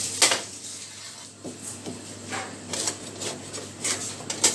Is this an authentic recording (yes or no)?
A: yes